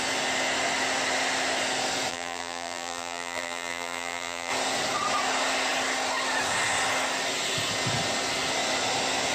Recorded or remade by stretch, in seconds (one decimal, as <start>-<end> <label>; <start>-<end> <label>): 0.0-2.1 recorded; 2.1-4.5 remade; 4.5-9.3 recorded